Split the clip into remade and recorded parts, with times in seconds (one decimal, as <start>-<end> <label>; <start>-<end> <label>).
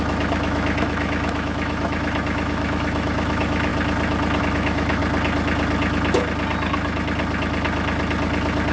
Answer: 0.0-3.7 remade; 3.7-4.4 recorded; 4.4-5.0 remade; 5.0-8.7 recorded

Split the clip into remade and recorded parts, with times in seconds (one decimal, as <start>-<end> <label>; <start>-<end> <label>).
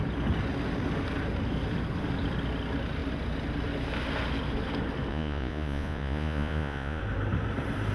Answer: 0.0-5.1 recorded; 5.1-7.0 remade; 7.0-7.9 recorded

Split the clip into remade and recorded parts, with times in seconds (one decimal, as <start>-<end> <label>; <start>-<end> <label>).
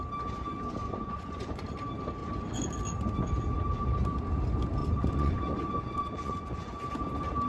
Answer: 0.0-0.8 recorded; 0.8-1.6 remade; 1.6-2.2 recorded; 2.2-2.7 remade; 2.7-4.8 recorded; 4.8-6.8 remade; 6.8-7.5 recorded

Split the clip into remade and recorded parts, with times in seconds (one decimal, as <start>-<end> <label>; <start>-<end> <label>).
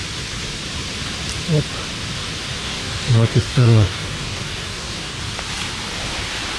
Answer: 0.0-2.6 recorded; 2.6-5.2 remade; 5.2-6.6 recorded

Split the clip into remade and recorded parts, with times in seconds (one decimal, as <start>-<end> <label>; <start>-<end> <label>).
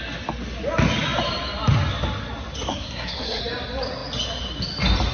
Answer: 0.0-2.7 recorded; 2.7-3.4 remade; 3.4-5.1 recorded